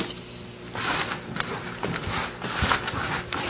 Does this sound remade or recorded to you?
recorded